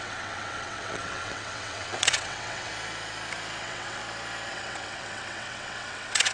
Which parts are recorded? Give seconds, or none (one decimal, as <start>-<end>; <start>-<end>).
2.7-3.6; 4.0-4.5